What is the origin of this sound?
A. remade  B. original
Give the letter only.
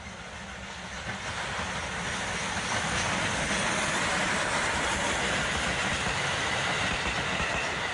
B